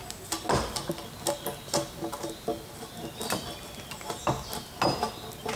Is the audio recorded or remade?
recorded